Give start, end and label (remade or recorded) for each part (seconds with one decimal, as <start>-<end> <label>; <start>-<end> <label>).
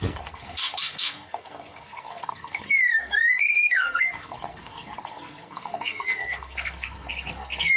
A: 0.0-7.8 remade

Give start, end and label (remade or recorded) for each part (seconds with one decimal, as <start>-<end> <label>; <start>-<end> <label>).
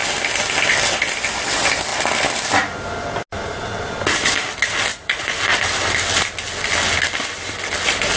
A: 0.0-4.9 recorded; 4.9-5.4 remade; 5.4-8.2 recorded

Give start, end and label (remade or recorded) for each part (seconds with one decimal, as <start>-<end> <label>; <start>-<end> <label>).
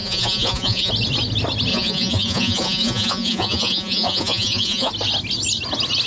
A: 0.0-0.9 remade; 0.9-1.7 recorded; 1.7-4.9 remade; 4.9-6.1 recorded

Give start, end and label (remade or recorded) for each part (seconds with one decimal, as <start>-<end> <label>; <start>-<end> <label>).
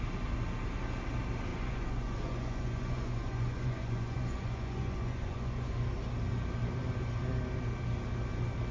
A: 0.0-1.5 recorded; 1.5-5.7 remade; 5.7-8.7 recorded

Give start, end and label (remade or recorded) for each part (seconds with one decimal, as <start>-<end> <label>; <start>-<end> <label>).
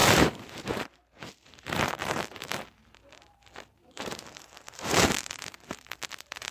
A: 0.0-6.5 remade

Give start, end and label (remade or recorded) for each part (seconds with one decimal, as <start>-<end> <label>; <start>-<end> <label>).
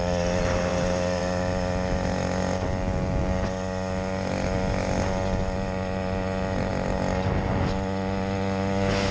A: 0.0-9.1 recorded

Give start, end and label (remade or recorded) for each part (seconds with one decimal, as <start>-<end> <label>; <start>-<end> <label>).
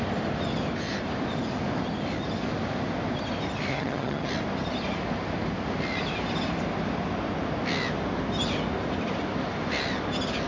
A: 0.0-3.7 recorded; 3.7-4.3 remade; 4.3-10.5 recorded